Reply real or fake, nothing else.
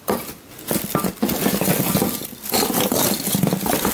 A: real